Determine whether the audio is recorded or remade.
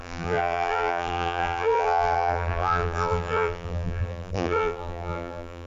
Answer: remade